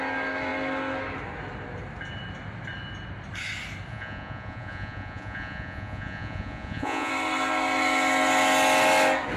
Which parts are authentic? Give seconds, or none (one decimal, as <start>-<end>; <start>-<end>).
0.0-3.9; 7.1-9.4